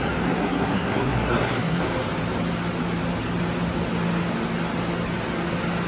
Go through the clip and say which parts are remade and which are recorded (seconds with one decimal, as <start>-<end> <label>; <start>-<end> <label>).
0.0-0.4 recorded; 0.4-1.8 remade; 1.8-5.9 recorded